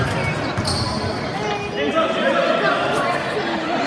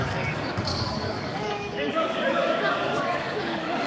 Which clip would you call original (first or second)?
first